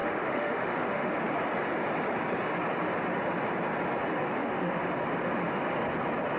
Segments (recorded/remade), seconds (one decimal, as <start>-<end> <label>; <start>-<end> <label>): 0.0-1.1 remade; 1.1-4.3 recorded; 4.3-4.9 remade; 4.9-6.4 recorded